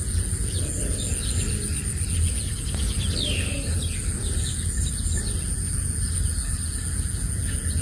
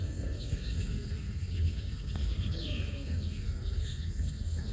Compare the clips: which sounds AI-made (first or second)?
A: second